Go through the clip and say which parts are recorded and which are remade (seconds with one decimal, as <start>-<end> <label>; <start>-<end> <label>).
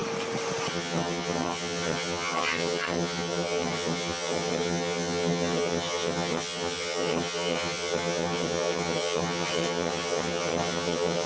0.0-0.7 recorded; 0.7-11.3 remade